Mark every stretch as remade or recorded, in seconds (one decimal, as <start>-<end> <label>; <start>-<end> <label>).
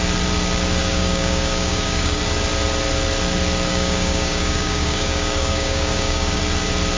0.0-0.8 recorded; 0.8-2.2 remade; 2.2-3.7 recorded; 3.7-6.4 remade; 6.4-7.0 recorded